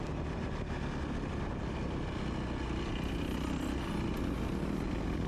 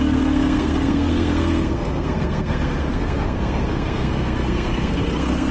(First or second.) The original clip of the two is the first